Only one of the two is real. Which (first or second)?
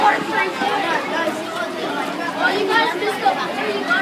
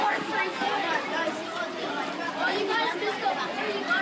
first